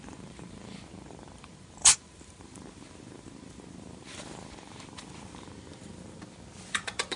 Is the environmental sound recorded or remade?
remade